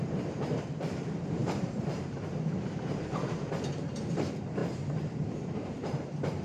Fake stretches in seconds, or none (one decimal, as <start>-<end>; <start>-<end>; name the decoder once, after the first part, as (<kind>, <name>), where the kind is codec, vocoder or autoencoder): 0.0-6.4 (vocoder, BigVGAN v2)